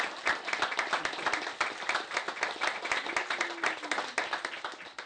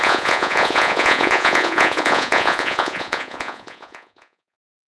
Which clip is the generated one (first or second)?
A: second